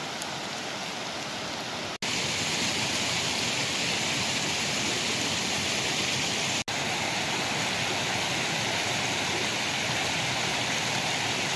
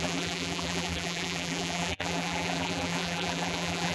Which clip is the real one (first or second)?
first